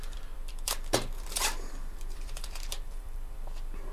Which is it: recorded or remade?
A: remade